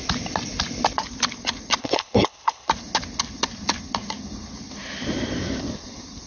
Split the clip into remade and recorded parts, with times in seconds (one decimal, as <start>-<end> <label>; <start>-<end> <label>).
0.0-1.8 recorded; 1.8-2.7 remade; 2.7-6.3 recorded